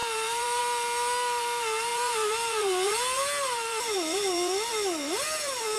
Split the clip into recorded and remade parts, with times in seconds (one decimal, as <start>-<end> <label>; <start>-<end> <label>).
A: 0.0-0.6 remade; 0.6-1.9 recorded; 1.9-5.8 remade